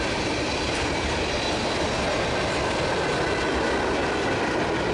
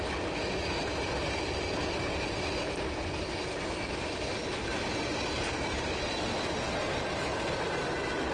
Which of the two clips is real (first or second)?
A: second